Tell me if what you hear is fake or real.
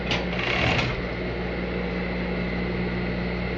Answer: real